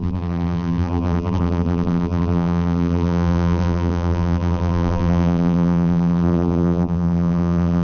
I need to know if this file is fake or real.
fake